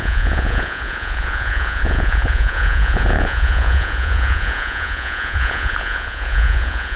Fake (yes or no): yes